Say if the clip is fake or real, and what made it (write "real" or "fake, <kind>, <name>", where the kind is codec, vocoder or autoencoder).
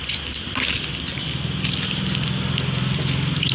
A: real